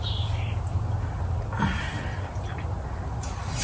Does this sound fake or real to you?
real